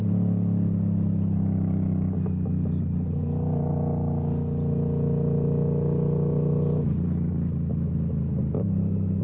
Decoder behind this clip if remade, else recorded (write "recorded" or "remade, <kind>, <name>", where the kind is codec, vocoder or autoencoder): recorded